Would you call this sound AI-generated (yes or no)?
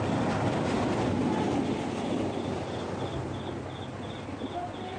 no